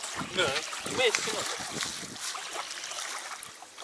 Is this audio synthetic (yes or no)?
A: no